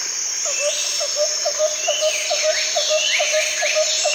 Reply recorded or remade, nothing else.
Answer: recorded